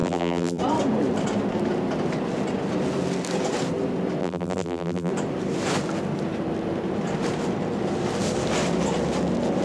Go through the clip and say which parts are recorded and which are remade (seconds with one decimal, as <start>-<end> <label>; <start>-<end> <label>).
0.0-0.6 remade; 0.6-4.2 recorded; 4.2-5.1 remade; 5.1-9.6 recorded